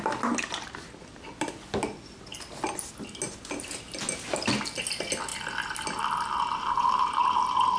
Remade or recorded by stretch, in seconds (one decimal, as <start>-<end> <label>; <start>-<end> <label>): 0.0-7.8 recorded